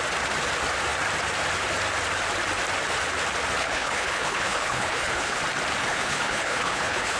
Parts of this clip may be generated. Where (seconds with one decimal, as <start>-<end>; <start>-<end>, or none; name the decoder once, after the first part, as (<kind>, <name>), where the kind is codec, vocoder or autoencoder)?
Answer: 3.6-5.4 (codec, HILCodec); 5.9-7.2